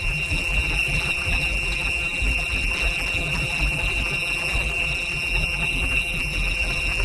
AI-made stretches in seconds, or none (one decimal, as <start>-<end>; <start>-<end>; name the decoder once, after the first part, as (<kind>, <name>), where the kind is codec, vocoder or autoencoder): 0.0-7.0 (vocoder, BigVGAN v2)